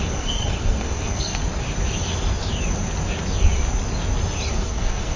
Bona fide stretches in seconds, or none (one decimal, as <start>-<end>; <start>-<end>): 1.4-4.5